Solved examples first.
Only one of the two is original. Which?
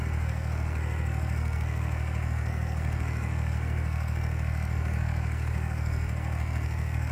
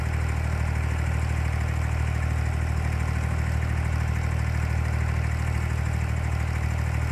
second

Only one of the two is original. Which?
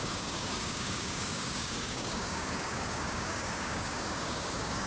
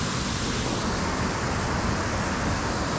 second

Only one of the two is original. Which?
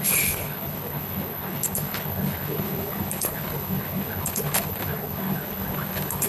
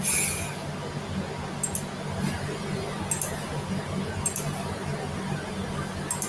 second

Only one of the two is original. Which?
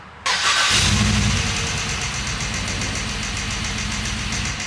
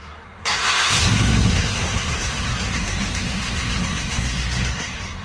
first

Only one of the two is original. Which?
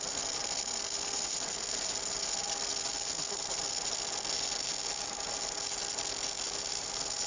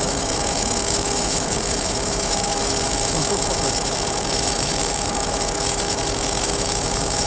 first